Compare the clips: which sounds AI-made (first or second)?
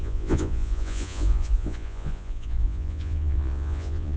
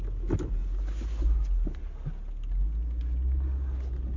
first